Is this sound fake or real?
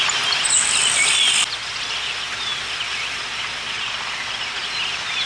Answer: real